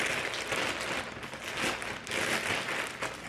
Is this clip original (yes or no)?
yes